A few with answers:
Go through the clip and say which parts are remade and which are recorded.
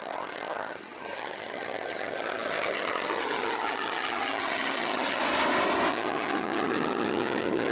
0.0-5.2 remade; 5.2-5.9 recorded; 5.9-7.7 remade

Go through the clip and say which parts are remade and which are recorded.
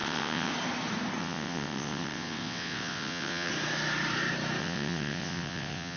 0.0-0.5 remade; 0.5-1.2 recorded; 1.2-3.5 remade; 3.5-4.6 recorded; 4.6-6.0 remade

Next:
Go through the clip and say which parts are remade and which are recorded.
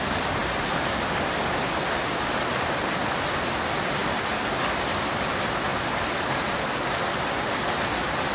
0.0-8.3 recorded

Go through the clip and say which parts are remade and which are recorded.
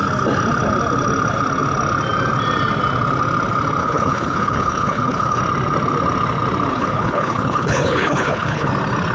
0.0-3.8 recorded; 3.8-5.4 remade; 5.4-6.7 recorded; 6.7-8.7 remade; 8.7-9.1 recorded